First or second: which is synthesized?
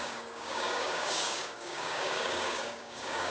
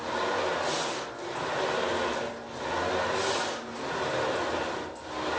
first